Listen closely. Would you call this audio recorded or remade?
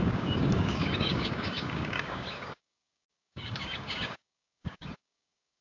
remade